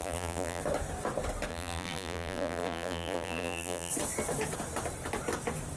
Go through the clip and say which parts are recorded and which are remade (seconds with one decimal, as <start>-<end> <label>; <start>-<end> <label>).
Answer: 0.0-0.6 remade; 0.6-1.5 recorded; 1.5-3.9 remade; 3.9-5.8 recorded

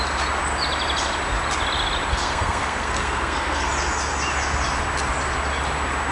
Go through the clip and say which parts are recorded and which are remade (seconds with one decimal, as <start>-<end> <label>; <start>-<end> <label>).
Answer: 0.0-2.1 recorded; 2.1-3.7 remade; 3.7-6.1 recorded